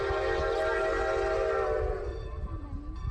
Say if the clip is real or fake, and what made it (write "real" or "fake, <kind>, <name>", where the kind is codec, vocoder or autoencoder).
real